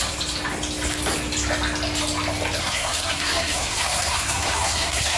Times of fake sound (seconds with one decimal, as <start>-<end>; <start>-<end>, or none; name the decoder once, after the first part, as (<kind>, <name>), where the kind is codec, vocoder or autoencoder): 2.6-5.2 (codec, SNAC)